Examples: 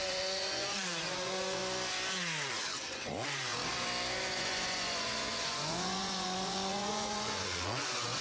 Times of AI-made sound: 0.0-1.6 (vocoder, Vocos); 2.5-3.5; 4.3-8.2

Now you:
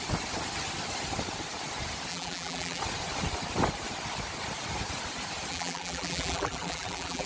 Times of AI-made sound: 2.1-2.8 (vocoder, BigVGAN v2); 5.5-7.3

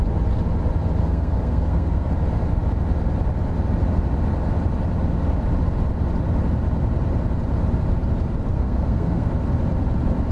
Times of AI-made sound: 1.0-2.1 (codec, SNAC); 8.5-9.3

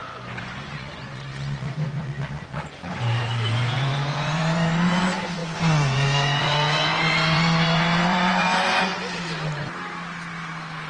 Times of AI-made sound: 0.0-8.9 (vocoder, Vocos)

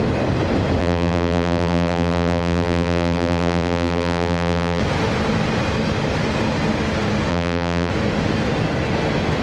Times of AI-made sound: 0.8-4.8 (vocoder, BigVGAN v2); 7.3-7.9

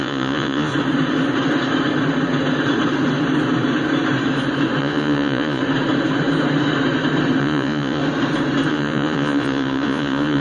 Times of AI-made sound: 0.0-0.7 (vocoder, Vocos); 4.8-5.6; 7.4-8.0; 8.7-10.4

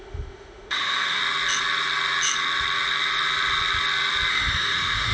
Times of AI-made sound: 0.0-1.2 (autoencoder, DAC-VAE); 4.3-5.1